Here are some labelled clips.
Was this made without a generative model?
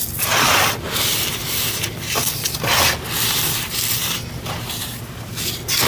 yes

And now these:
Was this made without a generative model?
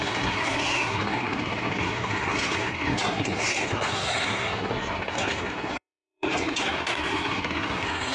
no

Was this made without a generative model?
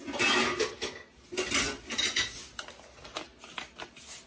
yes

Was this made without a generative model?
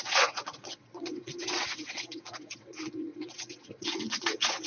no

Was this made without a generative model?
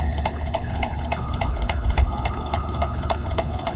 no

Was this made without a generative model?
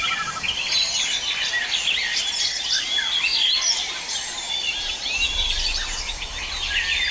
yes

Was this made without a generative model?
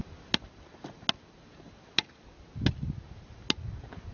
yes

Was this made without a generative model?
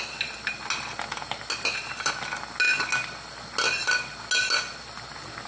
yes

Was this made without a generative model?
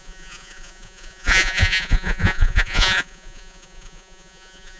no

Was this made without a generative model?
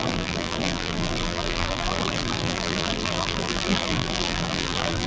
no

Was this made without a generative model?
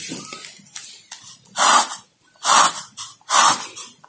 yes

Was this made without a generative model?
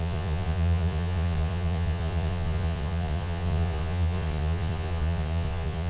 no